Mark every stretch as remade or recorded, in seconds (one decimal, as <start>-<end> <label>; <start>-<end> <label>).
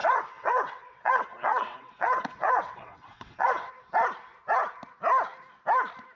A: 0.0-3.7 remade; 3.7-6.2 recorded